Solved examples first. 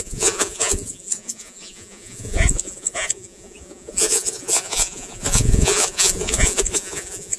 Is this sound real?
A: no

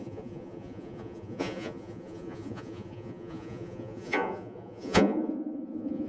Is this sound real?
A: no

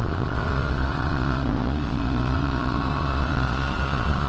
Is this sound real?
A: no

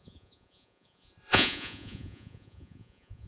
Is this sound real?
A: no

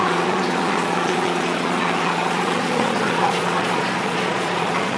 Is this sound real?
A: no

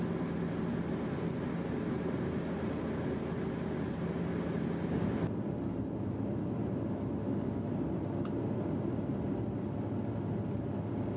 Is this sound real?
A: yes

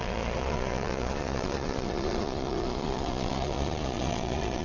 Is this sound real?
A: no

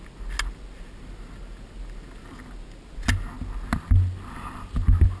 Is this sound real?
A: yes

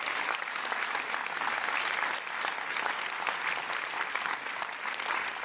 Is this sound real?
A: yes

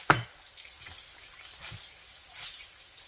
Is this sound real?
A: yes